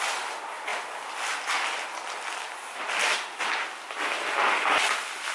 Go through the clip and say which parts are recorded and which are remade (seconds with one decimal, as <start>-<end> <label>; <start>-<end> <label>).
0.0-5.3 recorded